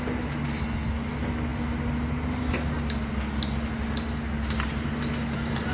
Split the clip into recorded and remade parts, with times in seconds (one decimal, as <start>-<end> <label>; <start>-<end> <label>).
0.0-5.7 recorded